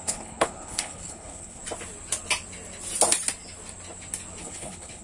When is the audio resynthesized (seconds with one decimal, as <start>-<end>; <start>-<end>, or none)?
0.0-1.6; 4.4-5.0

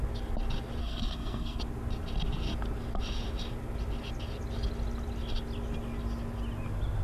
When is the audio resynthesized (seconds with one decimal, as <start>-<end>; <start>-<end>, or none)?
0.8-1.6